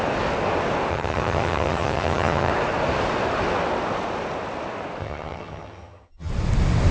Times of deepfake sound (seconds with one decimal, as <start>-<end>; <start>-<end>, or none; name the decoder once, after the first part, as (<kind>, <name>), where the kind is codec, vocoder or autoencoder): 0.9-2.5 (vocoder, HiFi-GAN); 5.0-6.3